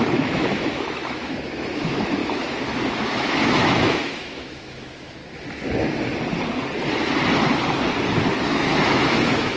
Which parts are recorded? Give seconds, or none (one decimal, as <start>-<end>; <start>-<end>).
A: 5.2-8.4